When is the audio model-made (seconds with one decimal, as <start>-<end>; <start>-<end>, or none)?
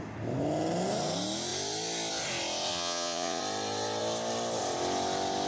2.7-3.4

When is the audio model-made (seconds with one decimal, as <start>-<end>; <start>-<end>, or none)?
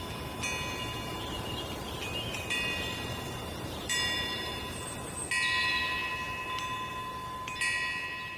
1.2-4.8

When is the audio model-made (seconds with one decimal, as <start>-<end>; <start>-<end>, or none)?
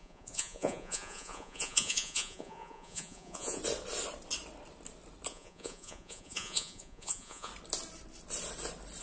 0.0-3.6; 5.3-7.5